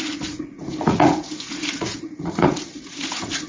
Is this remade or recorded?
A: remade